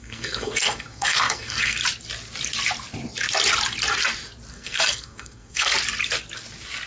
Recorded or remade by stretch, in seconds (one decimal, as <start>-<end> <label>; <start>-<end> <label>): 0.0-1.8 remade; 1.8-4.5 recorded; 4.5-5.7 remade; 5.7-6.9 recorded